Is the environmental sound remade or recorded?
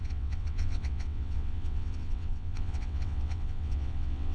remade